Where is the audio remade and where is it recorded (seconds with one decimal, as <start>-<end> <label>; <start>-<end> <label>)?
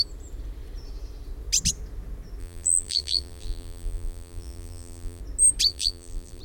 0.0-2.4 recorded; 2.4-5.2 remade; 5.2-5.7 recorded; 5.7-6.4 remade